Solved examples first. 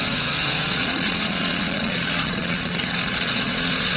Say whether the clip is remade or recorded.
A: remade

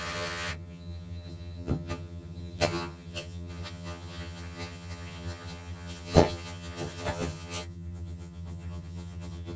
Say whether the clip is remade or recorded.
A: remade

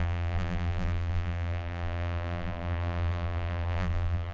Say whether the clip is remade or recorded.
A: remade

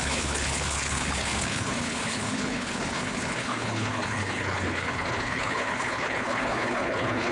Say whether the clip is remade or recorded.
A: remade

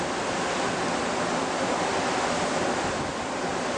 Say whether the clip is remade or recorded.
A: recorded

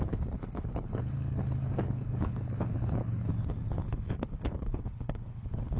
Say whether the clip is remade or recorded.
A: remade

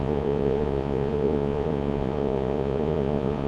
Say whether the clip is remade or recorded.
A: remade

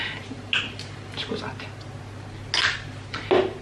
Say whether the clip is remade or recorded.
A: recorded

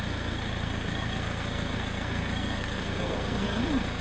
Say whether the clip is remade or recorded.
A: remade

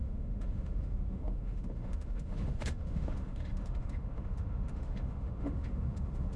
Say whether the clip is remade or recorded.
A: remade